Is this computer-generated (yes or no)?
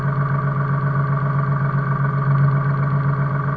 no